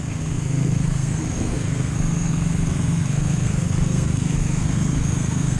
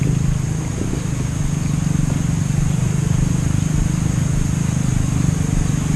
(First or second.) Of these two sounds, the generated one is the first